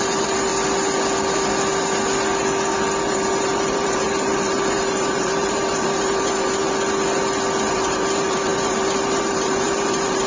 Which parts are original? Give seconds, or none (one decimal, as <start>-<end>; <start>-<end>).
0.5-3.0; 6.6-7.7